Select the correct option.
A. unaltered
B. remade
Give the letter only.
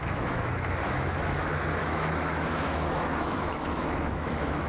B